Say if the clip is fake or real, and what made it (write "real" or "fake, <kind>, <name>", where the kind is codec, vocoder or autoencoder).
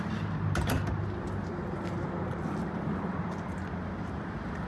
real